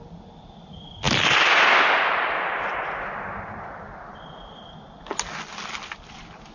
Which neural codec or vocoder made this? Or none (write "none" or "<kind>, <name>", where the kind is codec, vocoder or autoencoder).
none